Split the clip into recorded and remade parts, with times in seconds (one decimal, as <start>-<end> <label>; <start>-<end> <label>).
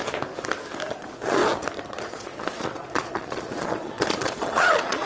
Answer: 0.0-0.9 recorded; 0.9-1.4 remade; 1.4-1.9 recorded; 1.9-5.1 remade